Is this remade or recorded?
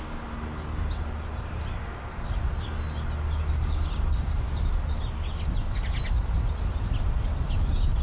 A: recorded